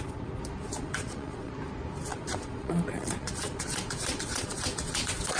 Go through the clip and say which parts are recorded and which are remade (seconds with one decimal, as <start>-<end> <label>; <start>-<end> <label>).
0.0-0.7 recorded; 0.7-1.5 remade; 1.5-2.1 recorded; 2.1-5.4 remade